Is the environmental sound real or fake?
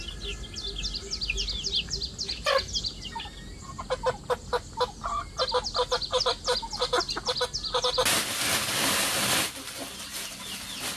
real